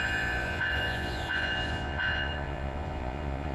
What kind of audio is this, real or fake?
fake